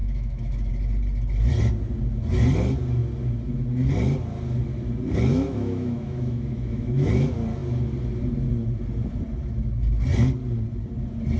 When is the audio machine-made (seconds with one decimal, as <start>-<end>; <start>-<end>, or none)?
0.0-0.7; 5.3-7.1

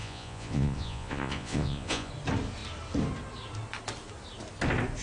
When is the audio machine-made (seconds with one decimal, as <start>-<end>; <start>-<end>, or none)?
0.0-2.1

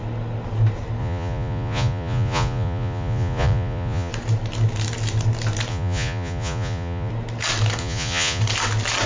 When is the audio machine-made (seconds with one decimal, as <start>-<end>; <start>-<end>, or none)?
1.0-4.1; 5.7-7.1; 7.8-8.4